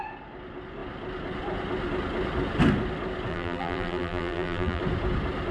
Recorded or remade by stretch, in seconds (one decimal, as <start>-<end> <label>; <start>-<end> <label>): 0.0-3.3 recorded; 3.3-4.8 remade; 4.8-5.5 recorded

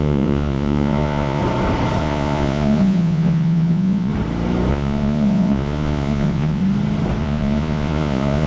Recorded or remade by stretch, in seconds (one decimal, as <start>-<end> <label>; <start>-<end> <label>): 0.0-1.4 remade; 1.4-2.0 recorded; 2.0-4.1 remade; 4.1-4.7 recorded; 4.7-6.6 remade; 6.6-7.2 recorded; 7.2-8.5 remade

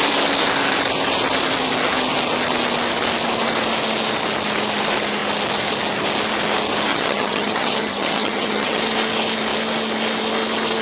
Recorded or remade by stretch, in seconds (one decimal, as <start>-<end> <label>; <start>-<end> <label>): 0.0-6.9 recorded; 6.9-8.8 remade; 8.8-10.8 recorded

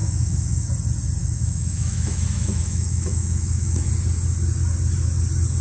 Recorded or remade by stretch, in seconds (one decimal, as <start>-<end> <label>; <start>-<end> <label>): 0.0-0.7 remade; 0.7-1.2 recorded; 1.2-3.9 remade; 3.9-5.6 recorded

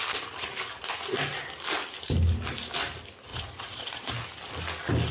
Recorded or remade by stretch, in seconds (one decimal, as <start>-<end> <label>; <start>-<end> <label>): 0.0-3.3 recorded; 3.3-4.1 remade; 4.1-5.1 recorded

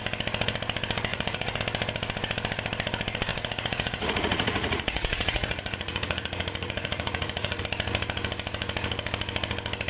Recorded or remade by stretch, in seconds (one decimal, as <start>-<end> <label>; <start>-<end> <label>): 0.0-1.1 recorded; 1.1-1.6 remade; 1.6-3.3 recorded; 3.3-7.6 remade; 7.6-9.9 recorded